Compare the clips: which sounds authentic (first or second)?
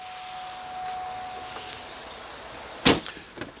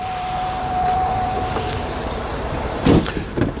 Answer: first